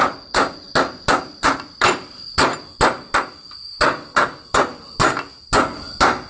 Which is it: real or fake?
real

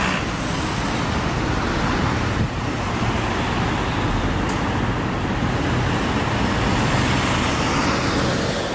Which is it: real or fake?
real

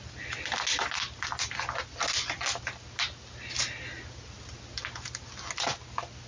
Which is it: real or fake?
real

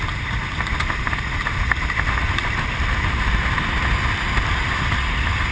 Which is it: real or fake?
real